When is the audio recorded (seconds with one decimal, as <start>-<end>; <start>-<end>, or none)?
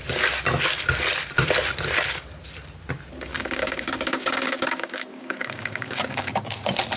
0.0-3.3; 6.3-7.0